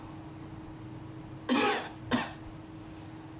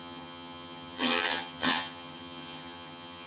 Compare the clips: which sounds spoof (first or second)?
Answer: second